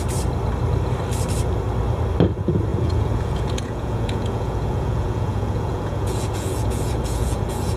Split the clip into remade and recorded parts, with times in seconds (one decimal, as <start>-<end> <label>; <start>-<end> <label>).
0.0-2.7 recorded; 2.7-7.8 remade